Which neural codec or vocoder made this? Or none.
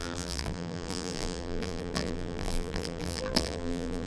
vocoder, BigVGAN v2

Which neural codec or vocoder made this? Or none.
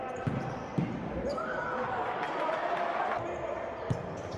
none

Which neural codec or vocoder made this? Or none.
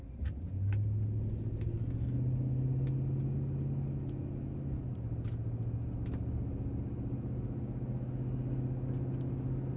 none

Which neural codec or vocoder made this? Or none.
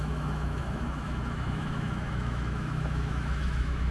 autoencoder, DAC-VAE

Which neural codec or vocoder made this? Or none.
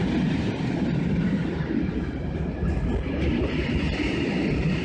none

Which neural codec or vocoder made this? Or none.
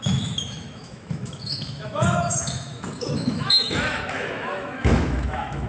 autoencoder, DAC-VAE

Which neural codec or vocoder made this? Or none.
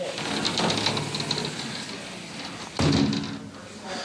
none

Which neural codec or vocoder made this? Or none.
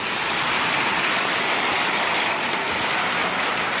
none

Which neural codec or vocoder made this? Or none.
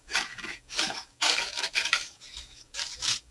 codec, DAC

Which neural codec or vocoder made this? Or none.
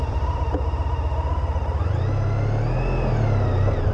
none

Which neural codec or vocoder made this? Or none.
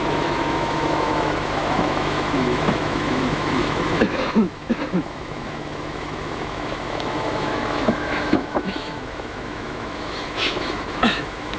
autoencoder, DAC-VAE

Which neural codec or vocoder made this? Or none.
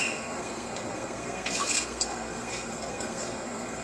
codec, SNAC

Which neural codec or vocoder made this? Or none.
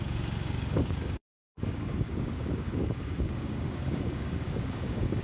codec, DAC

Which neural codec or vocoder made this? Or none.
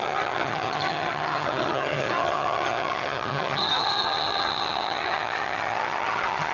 vocoder, HiFi-GAN